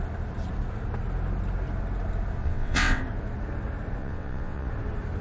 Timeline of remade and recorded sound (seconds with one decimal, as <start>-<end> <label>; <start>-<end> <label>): 0.0-2.4 recorded; 2.4-3.0 remade; 3.0-4.0 recorded; 4.0-4.7 remade; 4.7-5.2 recorded